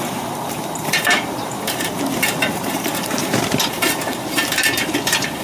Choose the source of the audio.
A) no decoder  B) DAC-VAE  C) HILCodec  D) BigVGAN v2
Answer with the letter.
D